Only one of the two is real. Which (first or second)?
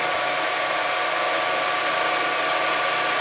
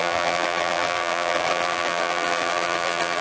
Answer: first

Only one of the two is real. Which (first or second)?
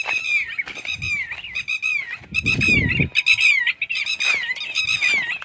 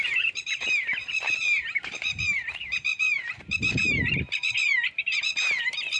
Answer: first